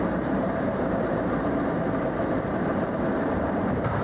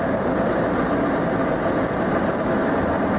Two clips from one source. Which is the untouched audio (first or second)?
second